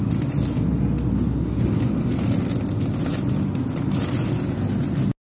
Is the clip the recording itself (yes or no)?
yes